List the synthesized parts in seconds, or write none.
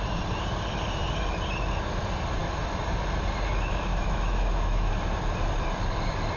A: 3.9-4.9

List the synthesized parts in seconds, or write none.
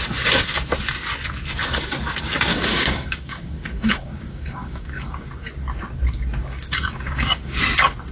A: 2.5-5.3; 6.4-7.6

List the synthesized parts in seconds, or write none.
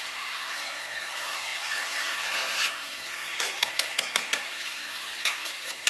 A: 0.0-5.9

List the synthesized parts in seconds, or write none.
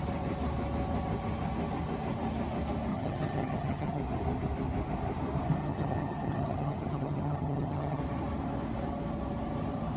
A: 2.9-4.0; 5.6-8.0